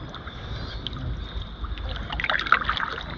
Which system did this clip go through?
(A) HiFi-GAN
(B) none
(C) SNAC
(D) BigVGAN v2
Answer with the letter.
B